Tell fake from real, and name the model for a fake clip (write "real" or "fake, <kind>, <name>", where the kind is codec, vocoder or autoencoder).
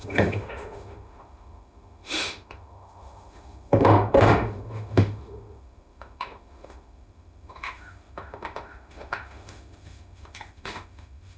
fake, autoencoder, DAC-VAE